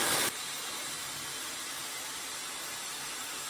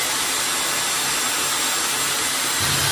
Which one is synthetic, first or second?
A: first